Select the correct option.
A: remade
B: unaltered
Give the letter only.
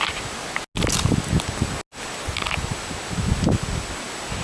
B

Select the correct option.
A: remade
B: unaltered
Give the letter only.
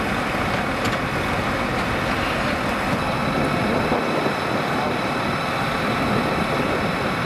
B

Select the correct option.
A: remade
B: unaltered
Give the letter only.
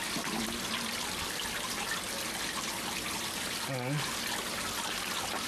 B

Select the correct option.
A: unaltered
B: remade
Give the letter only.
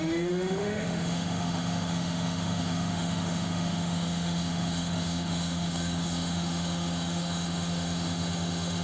B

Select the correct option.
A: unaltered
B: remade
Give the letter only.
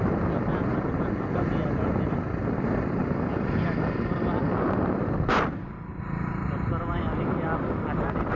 A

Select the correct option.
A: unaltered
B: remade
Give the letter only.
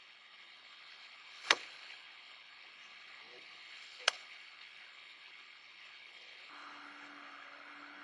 B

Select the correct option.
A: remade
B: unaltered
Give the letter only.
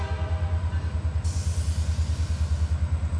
B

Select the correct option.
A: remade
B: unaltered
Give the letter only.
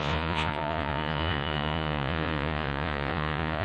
A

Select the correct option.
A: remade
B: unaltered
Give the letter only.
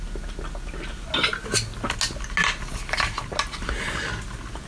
B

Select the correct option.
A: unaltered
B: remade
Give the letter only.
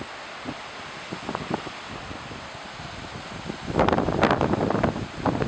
A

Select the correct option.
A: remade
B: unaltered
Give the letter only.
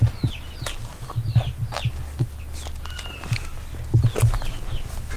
B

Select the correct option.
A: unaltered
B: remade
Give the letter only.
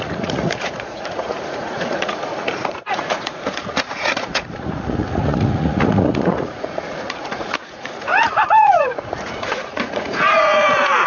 B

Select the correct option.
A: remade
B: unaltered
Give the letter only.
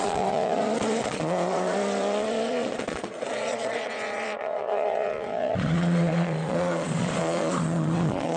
A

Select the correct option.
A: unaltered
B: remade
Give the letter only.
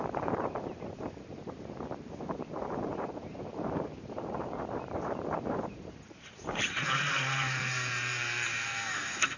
B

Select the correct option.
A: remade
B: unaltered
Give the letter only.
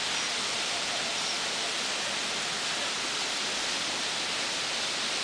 B